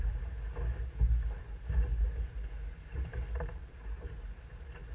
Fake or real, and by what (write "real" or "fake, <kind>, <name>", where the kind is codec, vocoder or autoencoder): real